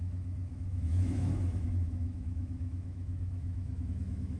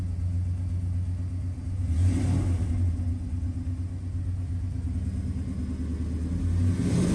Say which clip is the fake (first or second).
first